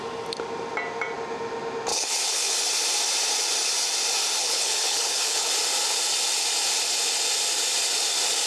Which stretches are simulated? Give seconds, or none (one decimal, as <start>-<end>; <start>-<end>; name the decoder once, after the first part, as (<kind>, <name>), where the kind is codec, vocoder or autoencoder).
1.9-2.6 (codec, HILCodec); 4.4-5.5